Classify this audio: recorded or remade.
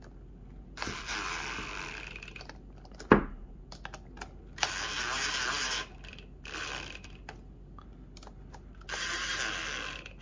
recorded